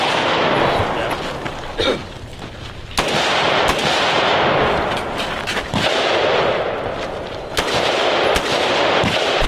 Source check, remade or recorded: recorded